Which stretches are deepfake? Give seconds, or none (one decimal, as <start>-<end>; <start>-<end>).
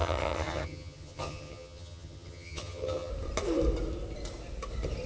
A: 0.0-3.1